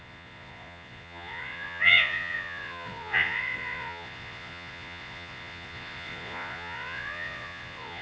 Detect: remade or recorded remade